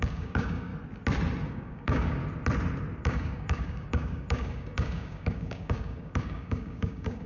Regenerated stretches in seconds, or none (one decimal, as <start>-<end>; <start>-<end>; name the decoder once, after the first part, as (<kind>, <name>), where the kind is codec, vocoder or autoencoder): 0.0-0.7 (codec, DAC); 1.5-2.2; 3.0-7.3